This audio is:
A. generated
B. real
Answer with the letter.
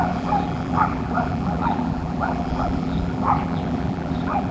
A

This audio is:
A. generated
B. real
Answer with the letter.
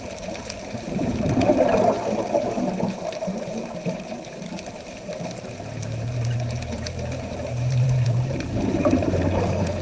A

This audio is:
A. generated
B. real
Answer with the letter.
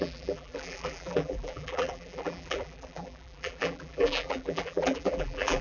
A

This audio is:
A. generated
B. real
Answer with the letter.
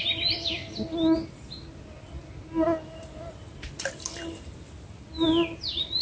B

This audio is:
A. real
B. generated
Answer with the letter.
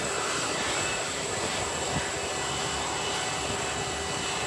A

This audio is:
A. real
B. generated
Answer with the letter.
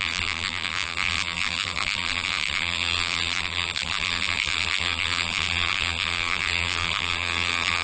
B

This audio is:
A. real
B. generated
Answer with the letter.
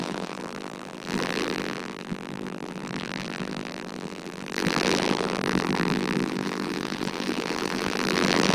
B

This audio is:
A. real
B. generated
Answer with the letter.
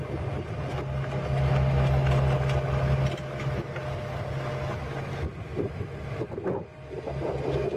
A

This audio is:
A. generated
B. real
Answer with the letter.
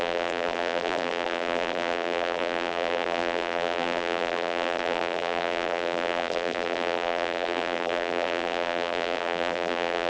A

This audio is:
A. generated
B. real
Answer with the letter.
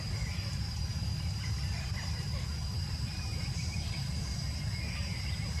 A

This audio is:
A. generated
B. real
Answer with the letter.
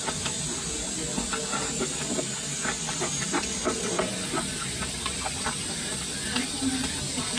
B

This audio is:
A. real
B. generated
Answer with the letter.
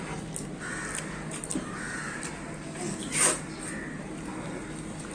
A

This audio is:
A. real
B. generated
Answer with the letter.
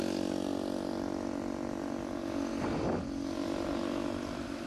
A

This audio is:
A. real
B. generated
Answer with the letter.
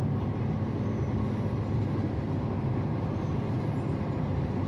A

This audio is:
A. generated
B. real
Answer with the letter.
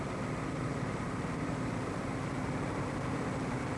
A